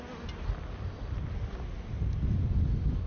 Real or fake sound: real